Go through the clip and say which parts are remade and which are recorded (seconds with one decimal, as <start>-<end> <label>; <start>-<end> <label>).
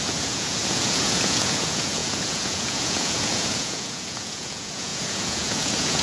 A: 0.0-6.0 remade